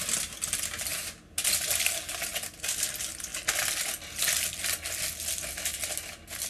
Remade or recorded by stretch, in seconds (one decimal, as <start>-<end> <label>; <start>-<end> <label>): 0.0-6.5 recorded